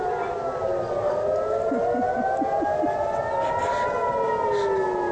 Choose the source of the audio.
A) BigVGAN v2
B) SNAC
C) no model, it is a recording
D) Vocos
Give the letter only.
C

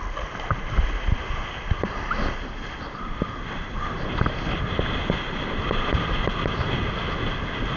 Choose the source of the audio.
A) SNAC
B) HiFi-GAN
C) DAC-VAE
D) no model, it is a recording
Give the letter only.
D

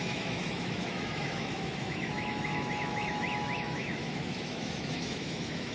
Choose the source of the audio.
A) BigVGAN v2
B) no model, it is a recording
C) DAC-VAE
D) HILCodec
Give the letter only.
C